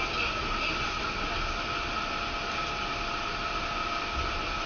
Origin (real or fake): real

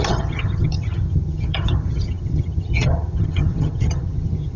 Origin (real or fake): fake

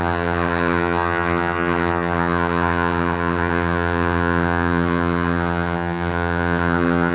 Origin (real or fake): fake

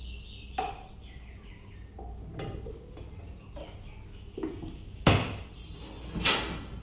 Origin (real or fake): real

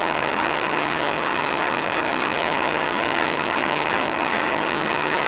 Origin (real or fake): fake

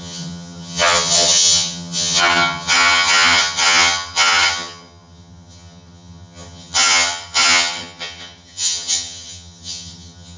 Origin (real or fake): fake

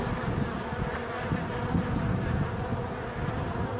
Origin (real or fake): real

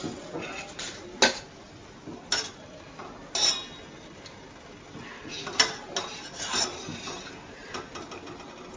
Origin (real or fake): real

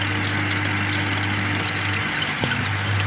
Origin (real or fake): real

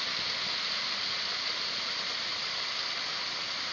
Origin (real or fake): real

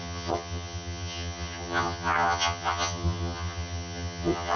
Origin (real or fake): fake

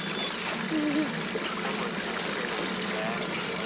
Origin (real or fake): real